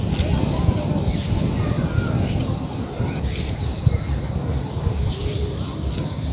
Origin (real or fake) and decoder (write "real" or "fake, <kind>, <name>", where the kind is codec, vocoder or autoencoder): real